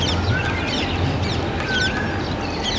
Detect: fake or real real